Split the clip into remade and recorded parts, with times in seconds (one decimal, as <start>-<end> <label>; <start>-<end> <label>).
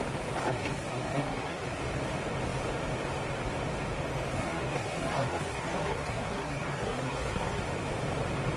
0.0-0.4 recorded; 0.4-1.8 remade; 1.8-4.3 recorded; 4.3-7.6 remade; 7.6-8.6 recorded